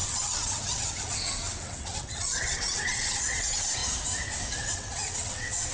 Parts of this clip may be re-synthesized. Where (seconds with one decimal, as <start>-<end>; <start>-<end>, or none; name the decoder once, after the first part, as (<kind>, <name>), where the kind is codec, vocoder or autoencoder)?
0.0-3.8 (vocoder, WaveNeXt); 4.5-5.7